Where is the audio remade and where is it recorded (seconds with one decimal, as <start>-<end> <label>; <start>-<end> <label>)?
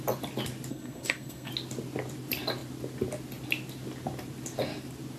0.0-0.7 recorded; 0.7-1.5 remade; 1.5-5.2 recorded